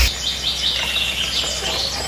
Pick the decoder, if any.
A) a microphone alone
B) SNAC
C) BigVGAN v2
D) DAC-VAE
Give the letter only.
A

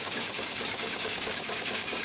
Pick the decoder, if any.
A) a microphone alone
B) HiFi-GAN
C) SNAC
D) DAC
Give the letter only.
D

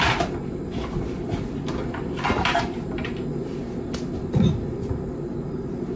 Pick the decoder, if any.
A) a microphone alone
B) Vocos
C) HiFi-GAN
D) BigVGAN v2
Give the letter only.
A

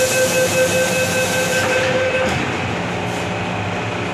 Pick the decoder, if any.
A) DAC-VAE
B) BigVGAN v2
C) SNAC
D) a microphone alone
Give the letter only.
D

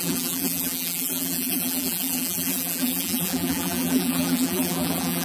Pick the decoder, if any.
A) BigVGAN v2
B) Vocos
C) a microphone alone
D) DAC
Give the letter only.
A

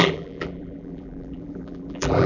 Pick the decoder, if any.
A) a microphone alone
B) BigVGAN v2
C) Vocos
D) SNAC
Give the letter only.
B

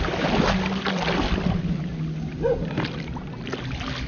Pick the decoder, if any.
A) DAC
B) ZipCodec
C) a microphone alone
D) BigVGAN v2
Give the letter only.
C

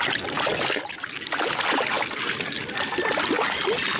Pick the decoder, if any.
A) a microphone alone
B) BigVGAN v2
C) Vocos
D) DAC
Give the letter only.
A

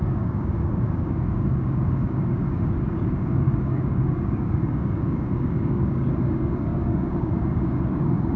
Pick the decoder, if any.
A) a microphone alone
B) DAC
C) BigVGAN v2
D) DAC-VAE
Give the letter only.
B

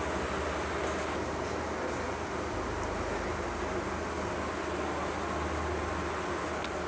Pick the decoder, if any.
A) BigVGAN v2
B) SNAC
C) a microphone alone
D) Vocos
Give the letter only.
C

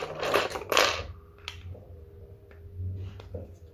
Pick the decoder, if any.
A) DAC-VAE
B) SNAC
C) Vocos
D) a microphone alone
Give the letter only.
D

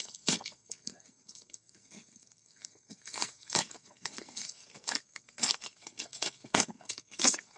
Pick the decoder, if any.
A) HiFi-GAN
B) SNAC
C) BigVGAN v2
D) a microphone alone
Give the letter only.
B